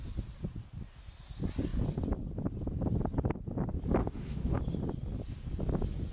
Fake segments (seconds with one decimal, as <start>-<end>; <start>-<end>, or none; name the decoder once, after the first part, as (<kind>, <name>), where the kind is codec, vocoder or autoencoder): 4.0-4.6 (autoencoder, DAC-VAE)